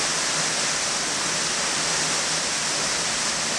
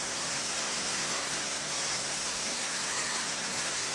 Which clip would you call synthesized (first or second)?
second